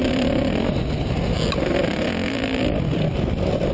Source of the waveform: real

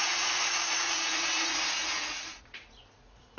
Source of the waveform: fake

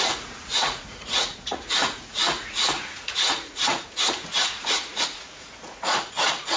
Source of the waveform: fake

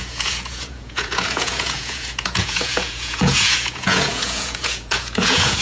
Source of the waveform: fake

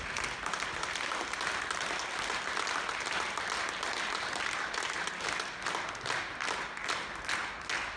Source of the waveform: real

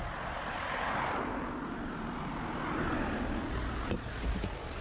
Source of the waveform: real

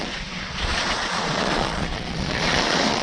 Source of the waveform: fake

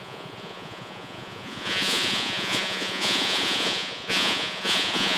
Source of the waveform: fake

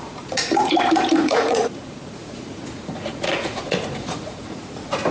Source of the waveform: fake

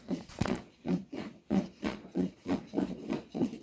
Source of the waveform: fake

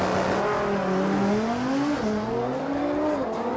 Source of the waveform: real